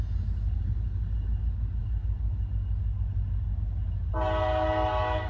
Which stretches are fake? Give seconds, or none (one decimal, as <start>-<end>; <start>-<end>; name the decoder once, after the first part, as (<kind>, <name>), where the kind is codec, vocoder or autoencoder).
none